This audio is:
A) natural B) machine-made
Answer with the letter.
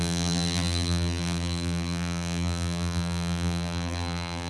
B